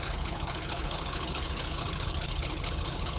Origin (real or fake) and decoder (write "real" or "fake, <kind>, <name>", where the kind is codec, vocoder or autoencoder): fake, codec, HILCodec